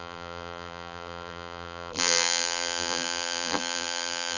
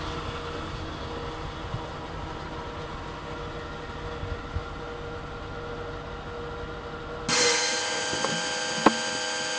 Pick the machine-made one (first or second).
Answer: first